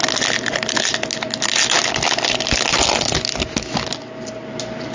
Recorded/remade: recorded